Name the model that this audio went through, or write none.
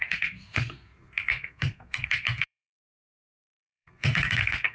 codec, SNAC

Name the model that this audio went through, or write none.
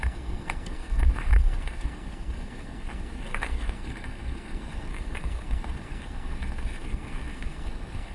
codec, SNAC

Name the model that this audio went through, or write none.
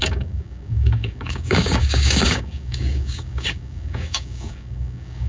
codec, DAC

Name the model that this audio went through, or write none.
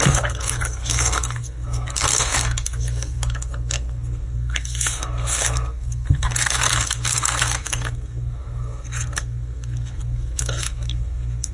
codec, SNAC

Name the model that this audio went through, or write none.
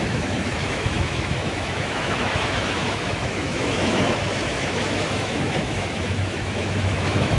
autoencoder, DAC-VAE